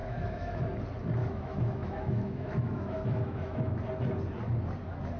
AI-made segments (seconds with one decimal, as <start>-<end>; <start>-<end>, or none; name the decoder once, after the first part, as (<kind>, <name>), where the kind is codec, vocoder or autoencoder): 0.0-0.6 (autoencoder, DAC-VAE); 1.2-3.8